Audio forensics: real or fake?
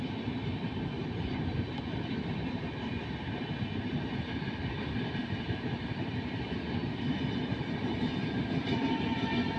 real